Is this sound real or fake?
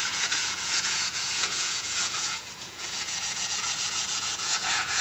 fake